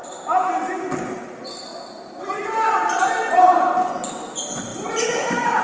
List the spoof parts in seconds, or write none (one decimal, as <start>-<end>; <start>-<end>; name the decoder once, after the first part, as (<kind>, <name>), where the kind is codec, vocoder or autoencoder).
4.7-5.6 (vocoder, BigVGAN v2)